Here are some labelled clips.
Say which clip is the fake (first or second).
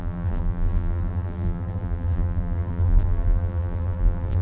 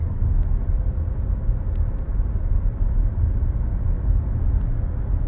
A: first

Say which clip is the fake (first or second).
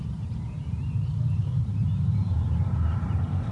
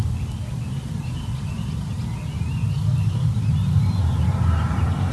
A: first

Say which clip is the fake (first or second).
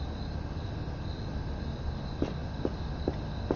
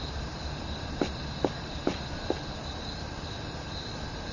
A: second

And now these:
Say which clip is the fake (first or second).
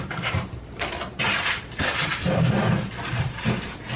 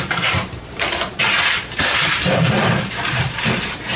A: second